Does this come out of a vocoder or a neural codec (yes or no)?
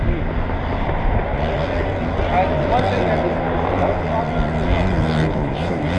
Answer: no